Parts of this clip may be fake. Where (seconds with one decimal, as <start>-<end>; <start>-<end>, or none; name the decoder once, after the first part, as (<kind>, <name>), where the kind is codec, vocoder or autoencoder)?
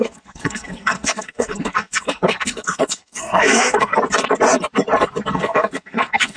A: 0.0-3.9 (codec, SNAC); 5.3-6.4